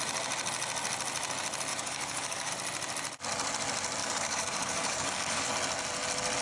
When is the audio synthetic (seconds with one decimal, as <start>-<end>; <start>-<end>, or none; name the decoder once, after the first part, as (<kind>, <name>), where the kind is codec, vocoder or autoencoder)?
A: 1.7-2.5 (codec, DAC); 4.0-5.5